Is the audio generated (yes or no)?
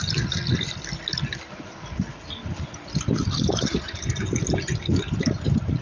no